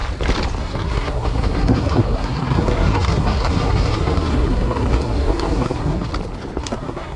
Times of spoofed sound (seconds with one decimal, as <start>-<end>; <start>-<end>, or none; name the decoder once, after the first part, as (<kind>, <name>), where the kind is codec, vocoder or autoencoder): 0.6-6.1 (codec, SNAC); 6.6-7.2